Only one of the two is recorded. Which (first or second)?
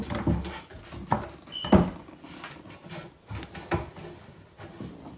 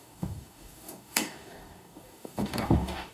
first